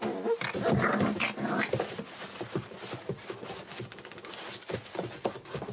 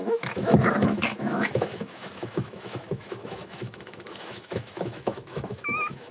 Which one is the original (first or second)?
first